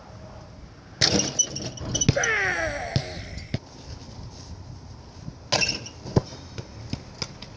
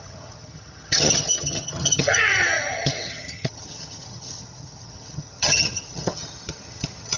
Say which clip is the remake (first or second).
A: second